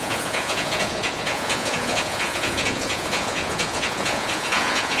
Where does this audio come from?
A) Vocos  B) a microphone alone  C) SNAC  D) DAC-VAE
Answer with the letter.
A